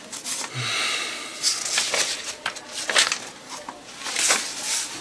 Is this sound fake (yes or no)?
no